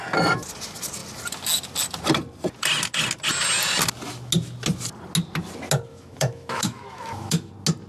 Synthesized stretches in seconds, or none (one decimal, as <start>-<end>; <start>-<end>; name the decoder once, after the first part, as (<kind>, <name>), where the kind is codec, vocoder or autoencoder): 5.9-7.5 (autoencoder, DAC-VAE)